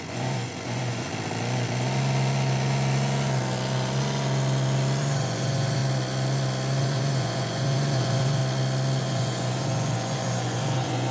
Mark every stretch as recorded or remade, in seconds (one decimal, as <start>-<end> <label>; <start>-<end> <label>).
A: 0.0-1.1 remade; 1.1-5.0 recorded; 5.0-5.8 remade; 5.8-6.8 recorded; 6.8-8.4 remade; 8.4-9.0 recorded; 9.0-11.1 remade